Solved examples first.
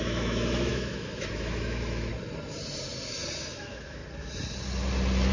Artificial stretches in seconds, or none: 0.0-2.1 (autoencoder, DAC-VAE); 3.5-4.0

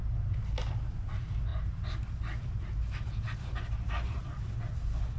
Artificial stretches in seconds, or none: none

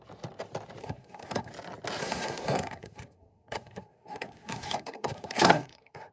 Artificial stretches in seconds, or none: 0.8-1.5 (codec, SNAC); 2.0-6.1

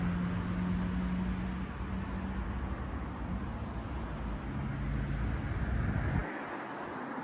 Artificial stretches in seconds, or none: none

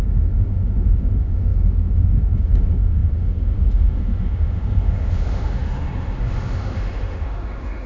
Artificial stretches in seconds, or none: 0.0-7.9 (autoencoder, DAC-VAE)

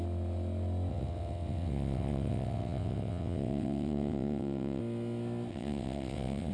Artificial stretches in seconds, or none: 0.9-4.8 (vocoder, WaveNeXt); 5.5-6.5

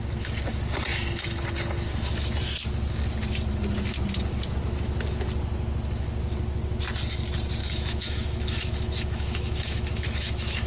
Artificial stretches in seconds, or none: 7.6-10.7 (autoencoder, DAC-VAE)

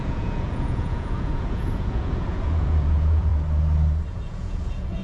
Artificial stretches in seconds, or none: 0.0-3.3 (vocoder, Vocos); 4.1-5.0